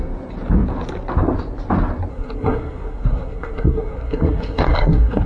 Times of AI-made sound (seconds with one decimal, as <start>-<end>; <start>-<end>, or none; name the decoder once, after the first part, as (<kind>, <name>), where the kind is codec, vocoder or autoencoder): 2.1-5.3 (codec, SNAC)

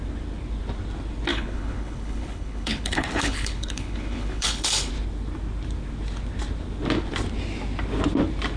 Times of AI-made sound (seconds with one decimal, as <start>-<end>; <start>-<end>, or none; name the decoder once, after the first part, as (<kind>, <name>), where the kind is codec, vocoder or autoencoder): 1.3-4.9 (codec, HILCodec)

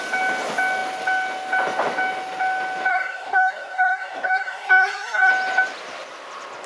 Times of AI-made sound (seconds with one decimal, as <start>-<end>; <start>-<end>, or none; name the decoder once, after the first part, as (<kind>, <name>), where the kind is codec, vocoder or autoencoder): 2.9-5.3 (codec, SNAC)

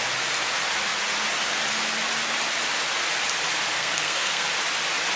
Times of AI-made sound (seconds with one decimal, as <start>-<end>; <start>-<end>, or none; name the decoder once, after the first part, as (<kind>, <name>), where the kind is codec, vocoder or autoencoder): 3.8-4.5 (codec, SNAC)